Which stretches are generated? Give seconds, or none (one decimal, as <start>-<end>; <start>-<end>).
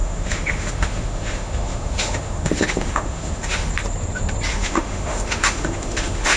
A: 0.0-3.7; 4.5-6.4